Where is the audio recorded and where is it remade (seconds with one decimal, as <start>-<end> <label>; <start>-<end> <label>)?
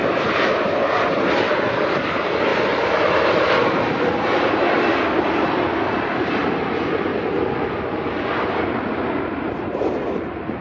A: 0.0-10.6 recorded